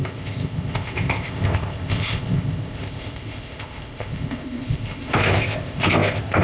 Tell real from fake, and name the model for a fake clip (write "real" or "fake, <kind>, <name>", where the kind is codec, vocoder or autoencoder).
fake, codec, ZipCodec